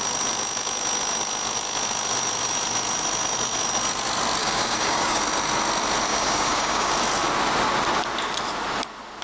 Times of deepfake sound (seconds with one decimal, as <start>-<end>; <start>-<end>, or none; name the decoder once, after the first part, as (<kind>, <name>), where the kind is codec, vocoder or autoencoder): 4.4-5.2 (codec, DAC); 6.1-6.9